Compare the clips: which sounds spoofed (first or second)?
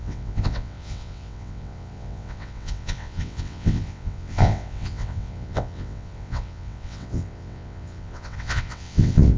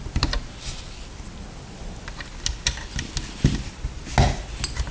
first